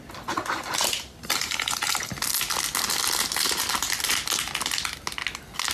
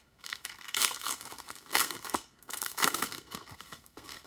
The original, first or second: first